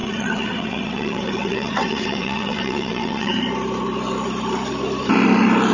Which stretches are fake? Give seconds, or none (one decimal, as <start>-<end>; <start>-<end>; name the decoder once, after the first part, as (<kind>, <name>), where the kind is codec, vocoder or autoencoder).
0.0-3.4 (vocoder, WaveNeXt)